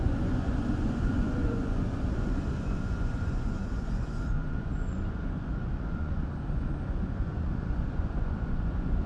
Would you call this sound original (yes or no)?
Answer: no